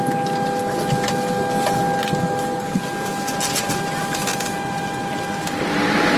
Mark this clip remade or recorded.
recorded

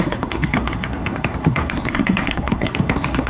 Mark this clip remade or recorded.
remade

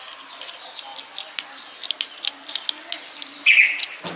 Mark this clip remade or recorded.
recorded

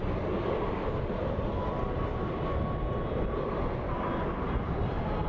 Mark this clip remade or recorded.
recorded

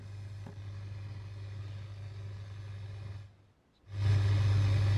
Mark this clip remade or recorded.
recorded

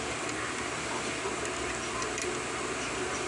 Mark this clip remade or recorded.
recorded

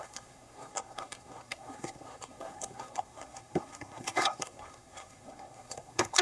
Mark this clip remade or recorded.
remade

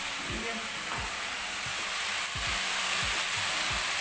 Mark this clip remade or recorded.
recorded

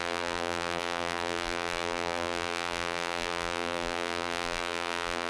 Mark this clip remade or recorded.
remade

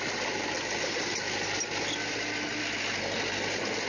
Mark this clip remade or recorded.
recorded